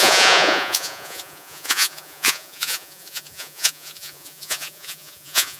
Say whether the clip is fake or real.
fake